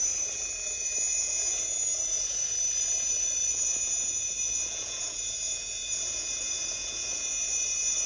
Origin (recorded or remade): remade